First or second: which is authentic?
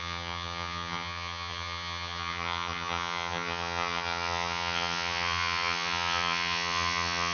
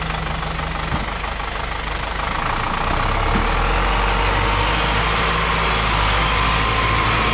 second